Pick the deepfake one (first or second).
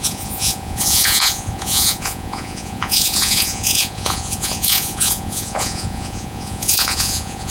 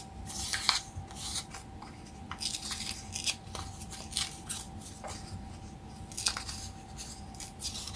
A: first